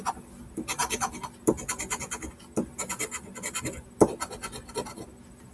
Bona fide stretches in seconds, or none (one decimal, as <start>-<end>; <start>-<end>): 0.0-5.5